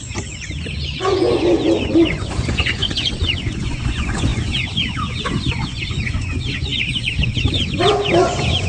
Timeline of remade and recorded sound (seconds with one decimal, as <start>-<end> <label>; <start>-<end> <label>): 0.0-8.7 remade